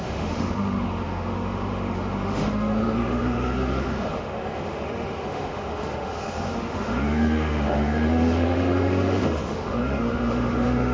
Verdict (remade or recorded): remade